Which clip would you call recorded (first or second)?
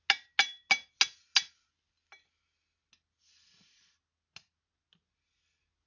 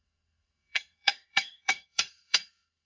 first